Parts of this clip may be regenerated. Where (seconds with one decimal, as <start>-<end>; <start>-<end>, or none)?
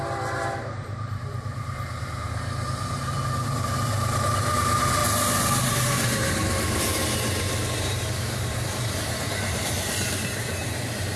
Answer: 0.0-5.0; 5.7-11.2